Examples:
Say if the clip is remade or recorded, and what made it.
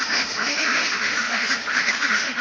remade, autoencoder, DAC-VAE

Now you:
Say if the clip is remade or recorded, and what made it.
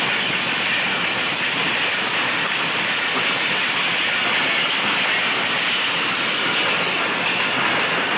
recorded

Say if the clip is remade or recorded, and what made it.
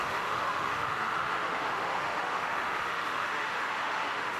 remade, autoencoder, DAC-VAE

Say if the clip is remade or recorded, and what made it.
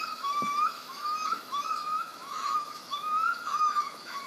remade, autoencoder, DAC-VAE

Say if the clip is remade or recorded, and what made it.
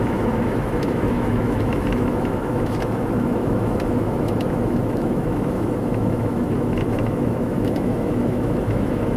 remade, autoencoder, DAC-VAE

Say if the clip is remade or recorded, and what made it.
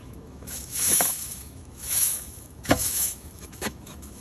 remade, autoencoder, DAC-VAE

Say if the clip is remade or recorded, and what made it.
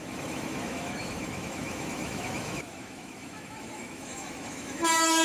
remade, autoencoder, DAC-VAE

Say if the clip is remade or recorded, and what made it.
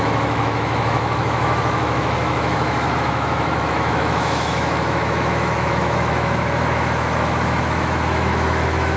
remade, autoencoder, DAC-VAE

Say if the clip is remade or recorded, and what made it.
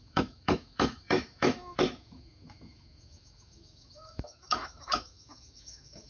remade, autoencoder, DAC-VAE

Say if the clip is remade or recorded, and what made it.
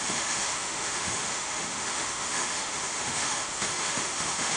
remade, autoencoder, DAC-VAE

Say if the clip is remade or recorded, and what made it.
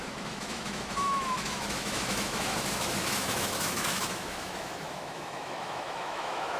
remade, autoencoder, DAC-VAE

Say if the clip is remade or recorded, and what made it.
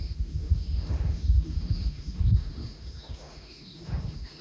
remade, autoencoder, DAC-VAE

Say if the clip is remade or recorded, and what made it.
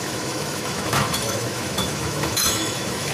remade, autoencoder, DAC-VAE